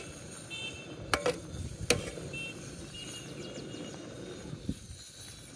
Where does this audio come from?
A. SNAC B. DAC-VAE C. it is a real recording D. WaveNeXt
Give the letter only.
C